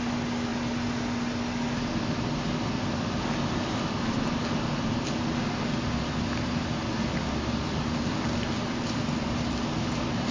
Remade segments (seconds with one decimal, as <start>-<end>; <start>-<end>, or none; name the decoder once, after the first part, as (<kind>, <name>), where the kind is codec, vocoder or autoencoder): none

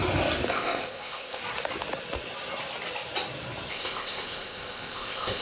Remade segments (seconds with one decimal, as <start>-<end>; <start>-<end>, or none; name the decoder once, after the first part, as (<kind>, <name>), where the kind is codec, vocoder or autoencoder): 0.5-1.4 (codec, ZipCodec); 3.7-5.4

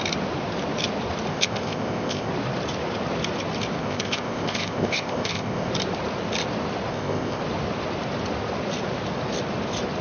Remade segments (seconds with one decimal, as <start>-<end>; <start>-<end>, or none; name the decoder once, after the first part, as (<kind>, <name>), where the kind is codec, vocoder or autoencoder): 1.3-2.3 (codec, ZipCodec); 3.8-5.7; 6.9-7.4

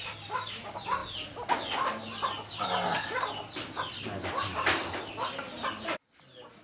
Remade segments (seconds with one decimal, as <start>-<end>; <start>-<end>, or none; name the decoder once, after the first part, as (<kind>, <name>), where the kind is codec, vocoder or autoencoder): none